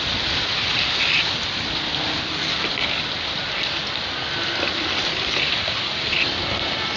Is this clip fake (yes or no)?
no